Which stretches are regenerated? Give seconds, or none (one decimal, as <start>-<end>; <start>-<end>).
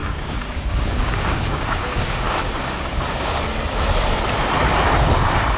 0.0-3.4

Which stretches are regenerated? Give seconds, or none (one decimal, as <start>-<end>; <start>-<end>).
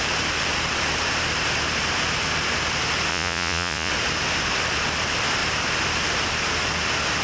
3.1-3.9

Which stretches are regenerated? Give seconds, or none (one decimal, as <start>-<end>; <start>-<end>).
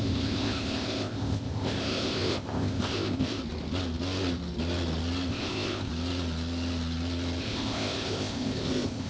0.0-3.4; 5.3-5.9; 7.4-9.1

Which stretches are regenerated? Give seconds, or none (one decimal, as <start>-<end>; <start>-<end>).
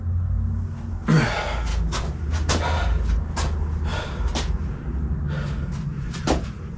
3.9-5.1; 5.9-6.8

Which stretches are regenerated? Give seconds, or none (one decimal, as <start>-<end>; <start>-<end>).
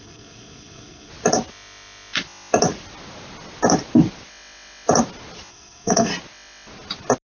0.0-1.1; 5.5-6.1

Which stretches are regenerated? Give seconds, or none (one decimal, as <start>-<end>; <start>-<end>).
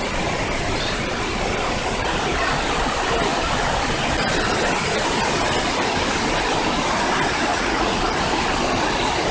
7.5-8.0